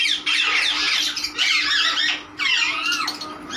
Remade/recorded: recorded